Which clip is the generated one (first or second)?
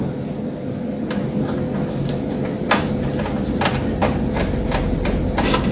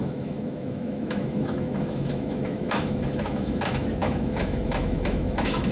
second